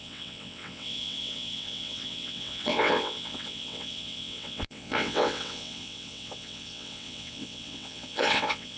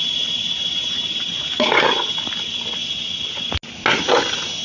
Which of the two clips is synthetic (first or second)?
first